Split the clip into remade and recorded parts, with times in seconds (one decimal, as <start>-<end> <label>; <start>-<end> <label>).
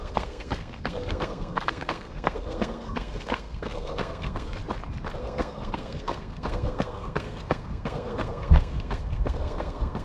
0.0-4.6 remade; 4.6-5.2 recorded; 5.2-10.0 remade